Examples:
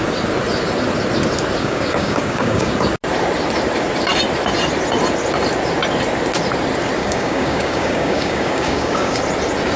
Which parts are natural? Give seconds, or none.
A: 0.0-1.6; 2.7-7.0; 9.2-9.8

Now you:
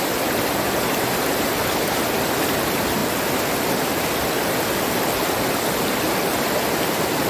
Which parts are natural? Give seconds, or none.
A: 0.0-7.3

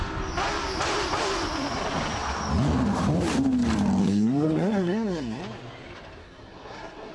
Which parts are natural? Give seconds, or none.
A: 0.0-4.0; 5.4-6.2

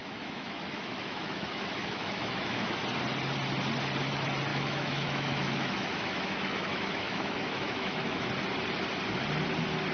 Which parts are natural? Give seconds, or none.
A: 2.8-4.5; 8.3-9.9

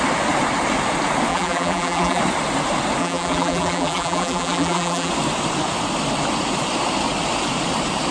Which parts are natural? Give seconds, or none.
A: 0.0-1.3; 2.2-3.0; 5.1-8.1

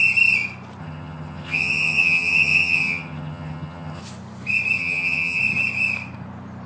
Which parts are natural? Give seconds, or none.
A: 0.0-0.8; 4.0-4.8; 5.4-6.7

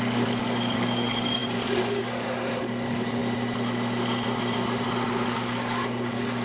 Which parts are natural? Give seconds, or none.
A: 3.2-5.1